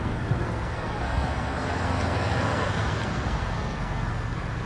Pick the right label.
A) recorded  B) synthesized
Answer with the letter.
B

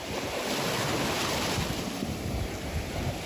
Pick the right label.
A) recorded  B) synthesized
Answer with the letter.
A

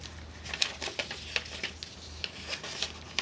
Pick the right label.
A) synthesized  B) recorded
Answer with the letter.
B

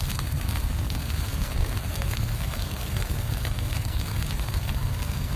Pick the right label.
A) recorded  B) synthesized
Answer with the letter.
B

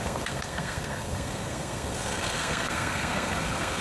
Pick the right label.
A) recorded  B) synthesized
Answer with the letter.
B